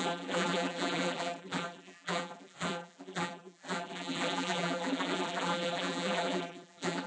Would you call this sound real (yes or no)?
no